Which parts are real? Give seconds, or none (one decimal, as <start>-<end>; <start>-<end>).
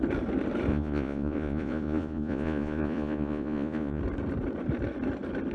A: 0.0-0.7; 4.0-5.5